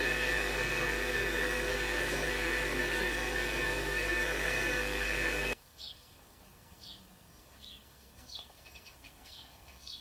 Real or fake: fake